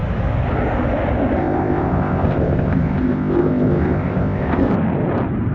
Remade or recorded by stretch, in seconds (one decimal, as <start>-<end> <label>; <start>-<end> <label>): 0.0-1.4 recorded; 1.4-4.7 remade; 4.7-5.5 recorded